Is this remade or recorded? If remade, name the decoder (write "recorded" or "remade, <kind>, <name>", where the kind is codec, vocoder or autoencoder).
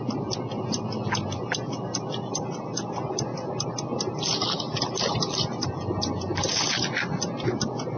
recorded